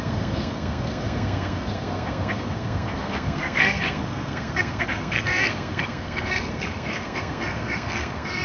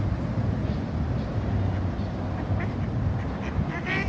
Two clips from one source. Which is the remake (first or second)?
first